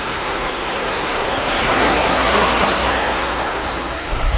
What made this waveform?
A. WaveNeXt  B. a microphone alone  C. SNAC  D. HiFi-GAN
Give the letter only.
C